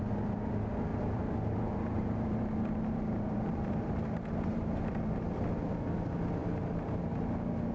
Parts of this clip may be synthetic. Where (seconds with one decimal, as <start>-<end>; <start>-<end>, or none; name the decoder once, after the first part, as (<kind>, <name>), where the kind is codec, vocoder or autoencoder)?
0.9-5.4 (vocoder, BigVGAN v2); 6.4-7.2